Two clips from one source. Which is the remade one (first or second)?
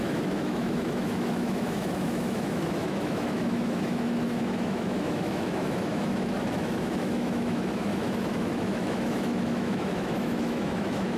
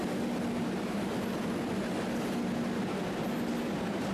first